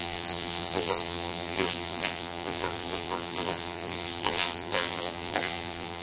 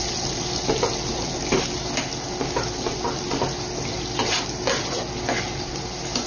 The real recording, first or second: second